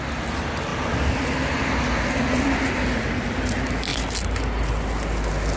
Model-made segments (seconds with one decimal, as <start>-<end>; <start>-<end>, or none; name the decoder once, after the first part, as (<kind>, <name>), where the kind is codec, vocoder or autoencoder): none